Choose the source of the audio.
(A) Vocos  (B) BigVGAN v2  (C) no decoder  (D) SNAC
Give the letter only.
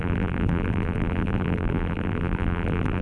B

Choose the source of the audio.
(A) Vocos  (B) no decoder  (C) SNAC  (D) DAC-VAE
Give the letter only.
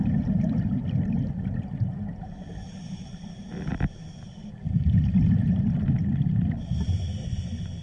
B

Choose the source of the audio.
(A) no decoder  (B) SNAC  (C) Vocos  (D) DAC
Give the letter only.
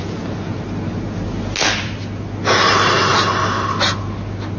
A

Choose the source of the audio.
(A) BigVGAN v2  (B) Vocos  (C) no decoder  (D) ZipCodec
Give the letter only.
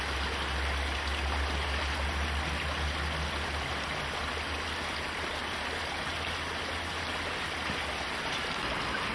C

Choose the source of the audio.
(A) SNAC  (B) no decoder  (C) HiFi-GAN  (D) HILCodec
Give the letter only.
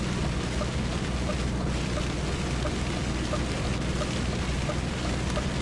B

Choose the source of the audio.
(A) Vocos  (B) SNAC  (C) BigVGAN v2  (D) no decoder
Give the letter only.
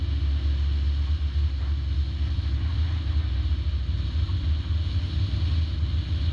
D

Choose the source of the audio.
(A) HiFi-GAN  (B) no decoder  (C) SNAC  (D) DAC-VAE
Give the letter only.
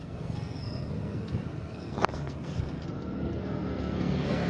C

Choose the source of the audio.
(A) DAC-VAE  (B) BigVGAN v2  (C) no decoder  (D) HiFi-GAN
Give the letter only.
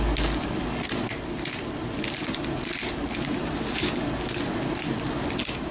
C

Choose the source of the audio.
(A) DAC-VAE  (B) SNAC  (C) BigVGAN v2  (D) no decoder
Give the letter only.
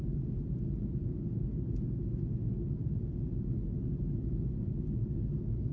D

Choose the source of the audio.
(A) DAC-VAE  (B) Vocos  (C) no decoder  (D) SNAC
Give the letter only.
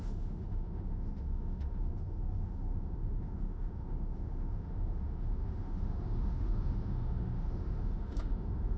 A